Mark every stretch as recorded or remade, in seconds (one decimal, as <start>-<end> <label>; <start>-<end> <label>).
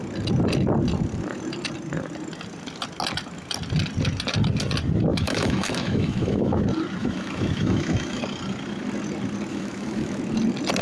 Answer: 0.0-5.1 recorded; 5.1-6.5 remade; 6.5-7.0 recorded; 7.0-8.2 remade; 8.2-9.5 recorded; 9.5-10.2 remade; 10.2-10.8 recorded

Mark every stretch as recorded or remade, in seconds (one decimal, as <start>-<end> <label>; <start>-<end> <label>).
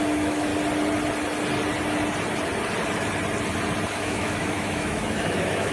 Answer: 0.0-0.5 remade; 0.5-3.9 recorded; 3.9-5.7 remade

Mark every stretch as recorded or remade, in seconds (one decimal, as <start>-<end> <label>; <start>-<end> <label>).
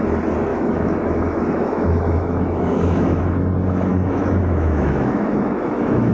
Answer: 0.0-0.5 recorded; 0.5-3.2 remade; 3.2-3.9 recorded; 3.9-6.1 remade